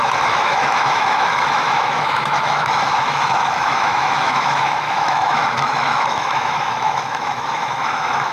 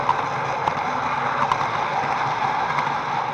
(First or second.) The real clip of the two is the second